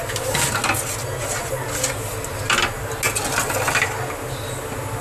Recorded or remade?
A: recorded